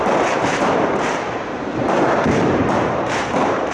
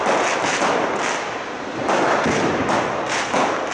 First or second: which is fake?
first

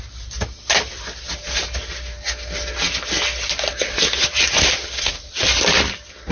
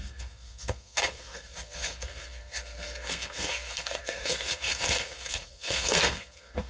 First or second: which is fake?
second